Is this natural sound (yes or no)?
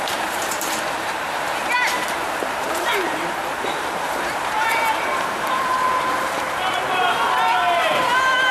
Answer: no